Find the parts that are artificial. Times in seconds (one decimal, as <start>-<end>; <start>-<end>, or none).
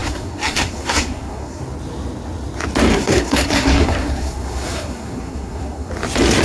0.0-1.6; 2.9-5.9